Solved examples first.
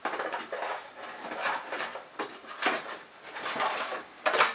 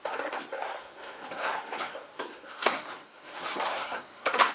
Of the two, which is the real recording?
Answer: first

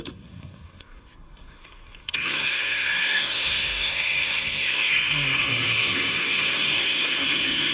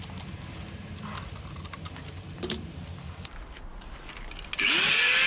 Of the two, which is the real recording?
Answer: second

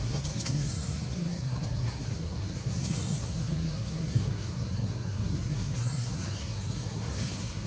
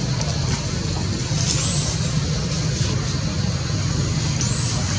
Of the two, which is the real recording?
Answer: second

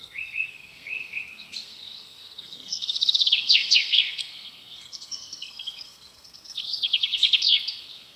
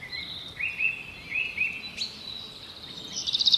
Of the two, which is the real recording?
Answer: second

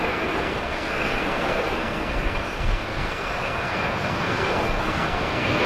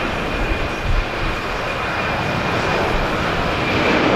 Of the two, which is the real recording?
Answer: second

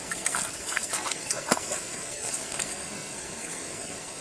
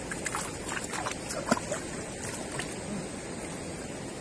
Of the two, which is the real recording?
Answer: second